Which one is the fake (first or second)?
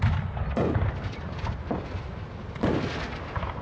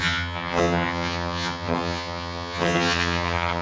second